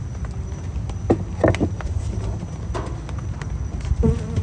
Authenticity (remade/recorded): recorded